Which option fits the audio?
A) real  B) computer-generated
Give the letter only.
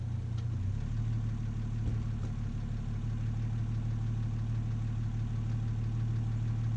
A